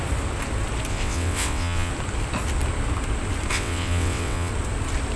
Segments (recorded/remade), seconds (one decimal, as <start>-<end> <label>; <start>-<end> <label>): 0.0-0.9 recorded; 0.9-1.9 remade; 1.9-3.5 recorded; 3.5-4.5 remade; 4.5-5.2 recorded